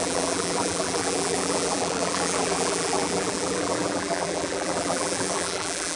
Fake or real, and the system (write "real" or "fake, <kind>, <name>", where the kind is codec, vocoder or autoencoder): fake, vocoder, BigVGAN v2